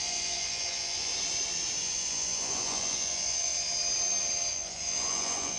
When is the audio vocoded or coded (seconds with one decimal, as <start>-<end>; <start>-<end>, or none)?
0.0-1.1; 1.8-3.5; 4.5-5.6